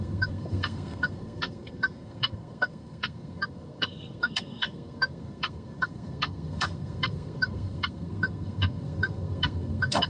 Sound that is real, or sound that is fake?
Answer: fake